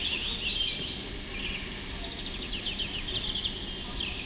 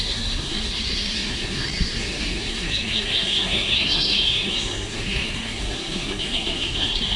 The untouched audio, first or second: first